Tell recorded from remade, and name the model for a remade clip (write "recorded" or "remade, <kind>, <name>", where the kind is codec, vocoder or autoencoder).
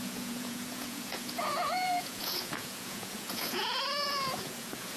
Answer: remade, vocoder, Vocos